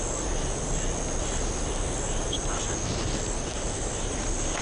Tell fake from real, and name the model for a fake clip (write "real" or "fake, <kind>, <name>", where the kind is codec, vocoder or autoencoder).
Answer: real